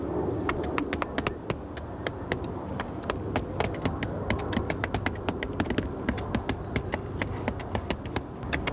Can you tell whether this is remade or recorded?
recorded